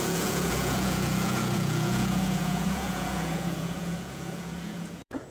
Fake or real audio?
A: fake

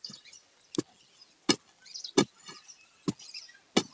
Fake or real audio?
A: real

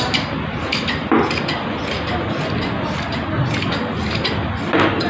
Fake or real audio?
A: real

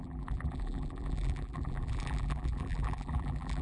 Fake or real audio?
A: fake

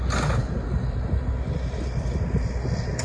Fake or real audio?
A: real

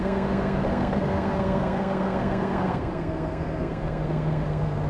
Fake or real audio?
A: fake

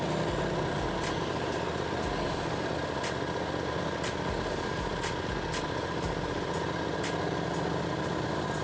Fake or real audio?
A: real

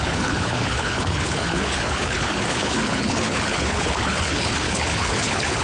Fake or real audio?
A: fake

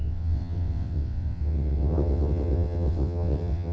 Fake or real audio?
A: fake